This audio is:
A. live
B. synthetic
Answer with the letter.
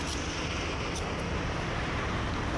A